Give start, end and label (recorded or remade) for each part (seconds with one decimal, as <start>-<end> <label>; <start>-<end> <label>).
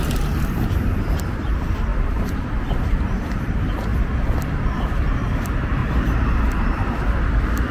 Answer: 0.0-5.8 remade; 5.8-6.5 recorded; 6.5-7.7 remade